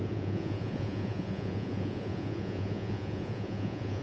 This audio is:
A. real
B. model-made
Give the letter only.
B